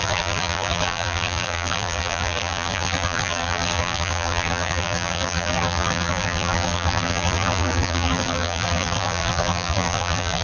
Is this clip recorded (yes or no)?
no